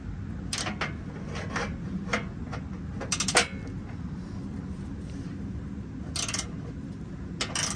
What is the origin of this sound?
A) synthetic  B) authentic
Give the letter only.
B